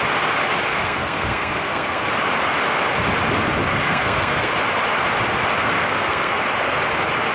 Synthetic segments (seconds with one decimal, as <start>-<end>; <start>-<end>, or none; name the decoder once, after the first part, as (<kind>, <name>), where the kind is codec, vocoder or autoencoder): 0.7-2.1 (codec, SNAC); 3.7-4.5; 5.6-6.4